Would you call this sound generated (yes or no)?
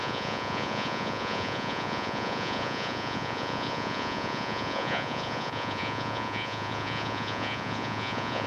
yes